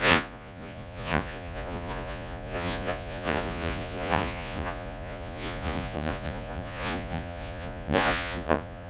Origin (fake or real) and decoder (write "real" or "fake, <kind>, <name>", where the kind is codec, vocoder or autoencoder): fake, vocoder, Vocos